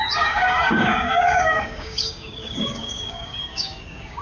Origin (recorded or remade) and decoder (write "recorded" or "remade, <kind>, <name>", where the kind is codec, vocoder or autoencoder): remade, codec, DAC